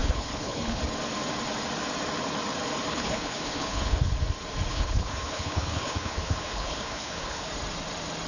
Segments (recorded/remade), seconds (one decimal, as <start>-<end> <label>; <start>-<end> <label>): 0.0-0.8 remade; 0.8-2.9 recorded; 2.9-4.1 remade; 4.1-4.7 recorded; 4.7-7.5 remade; 7.5-8.3 recorded